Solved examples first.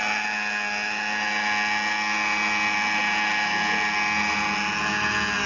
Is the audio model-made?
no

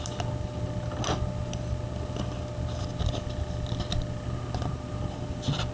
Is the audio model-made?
no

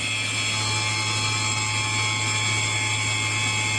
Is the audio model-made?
no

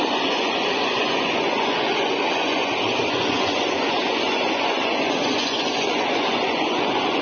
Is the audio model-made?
yes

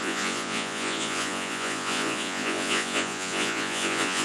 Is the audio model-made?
yes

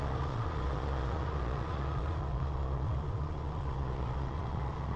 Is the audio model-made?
yes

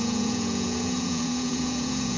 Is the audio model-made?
yes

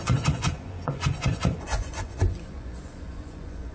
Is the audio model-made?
yes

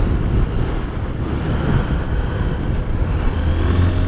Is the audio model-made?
no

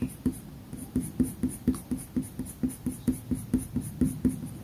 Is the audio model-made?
no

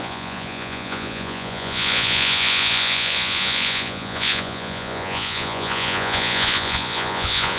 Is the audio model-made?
yes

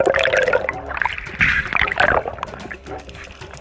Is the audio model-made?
no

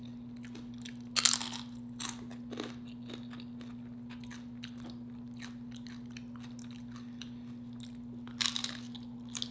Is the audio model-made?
no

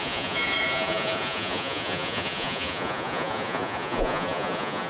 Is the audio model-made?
yes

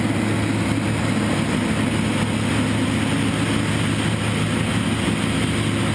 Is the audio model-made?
no